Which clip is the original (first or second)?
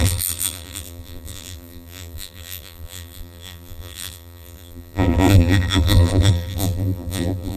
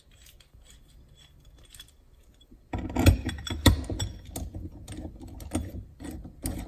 second